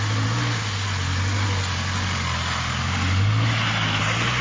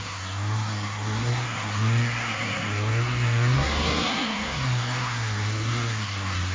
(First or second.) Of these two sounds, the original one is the first